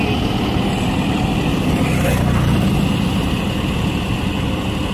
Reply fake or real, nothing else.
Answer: real